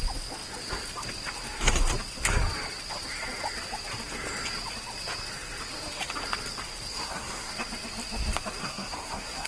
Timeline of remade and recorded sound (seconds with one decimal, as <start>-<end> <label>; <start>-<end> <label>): 0.0-6.9 recorded; 6.9-7.5 remade; 7.5-8.6 recorded; 8.6-9.5 remade